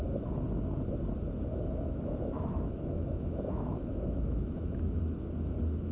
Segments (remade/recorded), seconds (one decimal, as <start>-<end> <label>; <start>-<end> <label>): 0.0-1.5 recorded; 1.5-5.0 remade; 5.0-5.9 recorded